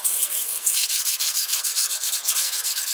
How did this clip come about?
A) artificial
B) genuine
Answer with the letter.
A